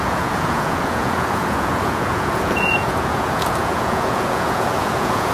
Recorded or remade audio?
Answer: remade